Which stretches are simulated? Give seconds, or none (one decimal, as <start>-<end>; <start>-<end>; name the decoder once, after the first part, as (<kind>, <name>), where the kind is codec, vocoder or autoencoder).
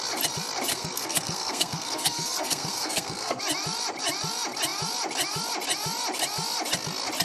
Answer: 0.7-3.4 (codec, SNAC)